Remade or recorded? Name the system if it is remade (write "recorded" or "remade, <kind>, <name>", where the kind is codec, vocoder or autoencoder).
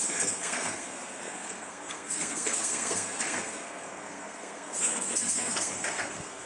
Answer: remade, codec, SNAC